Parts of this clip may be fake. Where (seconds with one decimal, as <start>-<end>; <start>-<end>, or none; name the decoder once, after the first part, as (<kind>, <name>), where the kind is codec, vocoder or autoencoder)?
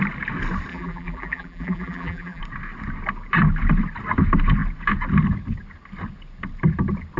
0.7-2.4 (vocoder, BigVGAN v2)